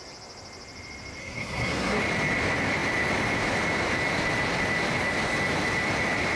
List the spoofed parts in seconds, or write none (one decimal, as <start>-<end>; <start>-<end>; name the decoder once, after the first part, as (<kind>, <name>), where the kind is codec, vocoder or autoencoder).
1.2-2.0 (codec, SNAC)